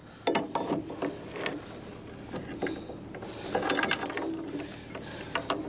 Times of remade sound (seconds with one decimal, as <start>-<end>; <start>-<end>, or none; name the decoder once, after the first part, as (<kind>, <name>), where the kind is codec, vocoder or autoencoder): none